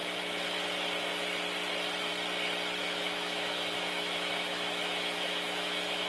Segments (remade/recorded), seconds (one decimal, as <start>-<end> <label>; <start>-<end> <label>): 0.0-2.8 recorded; 2.8-6.1 remade